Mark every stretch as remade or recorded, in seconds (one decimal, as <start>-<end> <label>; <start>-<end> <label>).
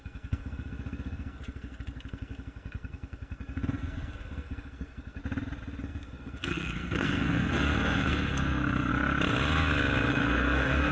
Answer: 0.0-5.2 remade; 5.2-5.8 recorded; 5.8-8.9 remade; 8.9-10.1 recorded; 10.1-10.9 remade